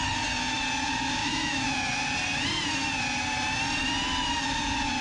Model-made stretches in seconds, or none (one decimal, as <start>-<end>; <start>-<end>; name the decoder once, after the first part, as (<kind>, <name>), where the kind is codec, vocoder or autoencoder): 1.2-1.7 (autoencoder, DAC-VAE)